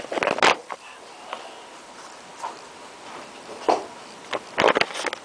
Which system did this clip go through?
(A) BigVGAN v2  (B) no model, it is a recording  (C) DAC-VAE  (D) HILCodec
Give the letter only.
B